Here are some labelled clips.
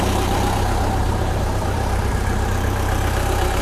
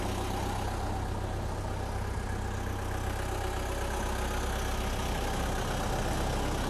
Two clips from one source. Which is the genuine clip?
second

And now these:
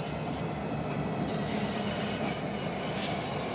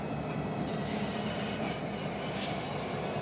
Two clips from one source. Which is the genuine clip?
second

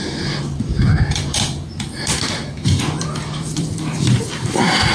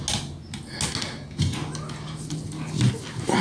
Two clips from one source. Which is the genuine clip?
second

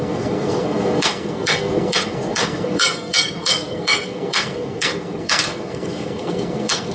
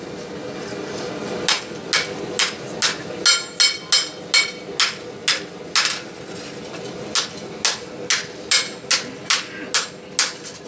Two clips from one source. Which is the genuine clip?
second